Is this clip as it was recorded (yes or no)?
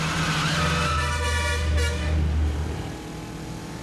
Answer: yes